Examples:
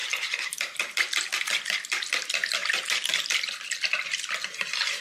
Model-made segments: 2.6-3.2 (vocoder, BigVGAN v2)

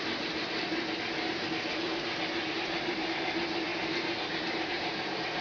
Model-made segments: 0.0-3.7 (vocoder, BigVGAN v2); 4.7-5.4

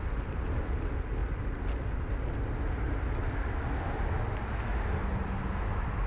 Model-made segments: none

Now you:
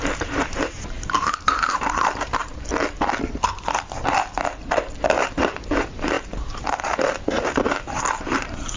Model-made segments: 0.0-2.4 (vocoder, BigVGAN v2); 6.3-8.8